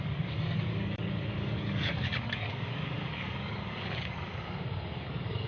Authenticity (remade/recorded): remade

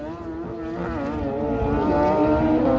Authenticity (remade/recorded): recorded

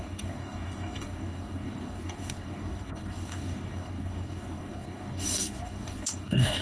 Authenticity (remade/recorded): remade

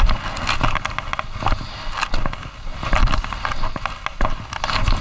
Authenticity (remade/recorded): recorded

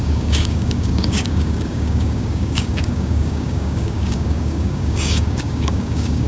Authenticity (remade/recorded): remade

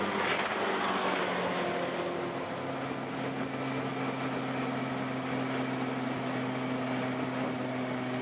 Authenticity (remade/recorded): recorded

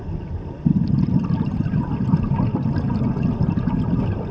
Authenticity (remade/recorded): recorded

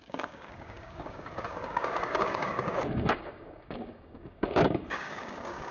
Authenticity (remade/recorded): remade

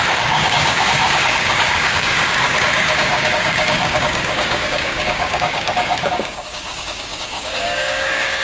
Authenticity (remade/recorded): remade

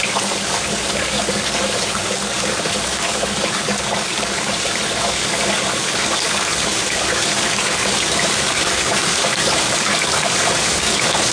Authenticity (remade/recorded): remade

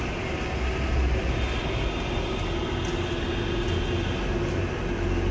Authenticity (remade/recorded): recorded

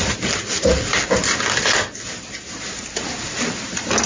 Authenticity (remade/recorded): recorded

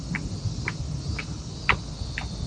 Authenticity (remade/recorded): recorded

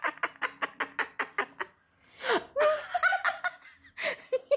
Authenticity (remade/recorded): recorded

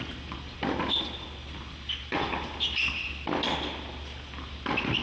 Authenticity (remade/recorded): recorded